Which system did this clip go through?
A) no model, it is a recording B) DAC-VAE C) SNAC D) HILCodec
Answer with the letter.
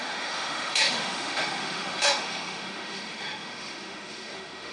B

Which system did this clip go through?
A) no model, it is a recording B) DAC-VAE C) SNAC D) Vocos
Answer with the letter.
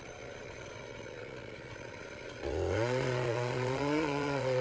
D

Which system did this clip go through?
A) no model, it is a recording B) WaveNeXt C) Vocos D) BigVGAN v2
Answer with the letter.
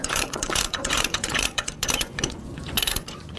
C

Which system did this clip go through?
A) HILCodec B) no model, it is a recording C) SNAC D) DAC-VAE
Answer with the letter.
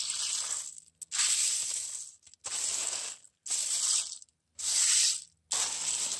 B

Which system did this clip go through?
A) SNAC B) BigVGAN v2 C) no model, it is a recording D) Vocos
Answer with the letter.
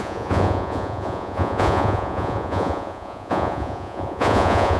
D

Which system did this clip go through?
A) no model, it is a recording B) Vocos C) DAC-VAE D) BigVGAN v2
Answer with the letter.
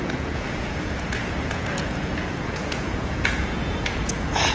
B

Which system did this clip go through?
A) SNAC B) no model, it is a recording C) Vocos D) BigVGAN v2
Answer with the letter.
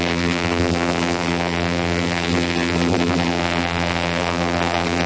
D